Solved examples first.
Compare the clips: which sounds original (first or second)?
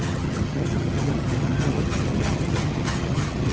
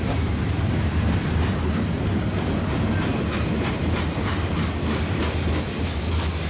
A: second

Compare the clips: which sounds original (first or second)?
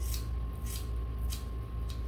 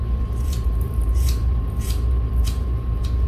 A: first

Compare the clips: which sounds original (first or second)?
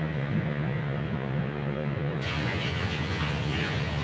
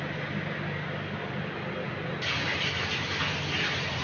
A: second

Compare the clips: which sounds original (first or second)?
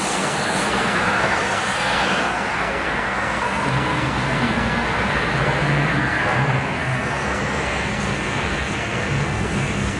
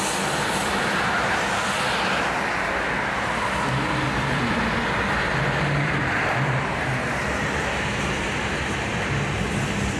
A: second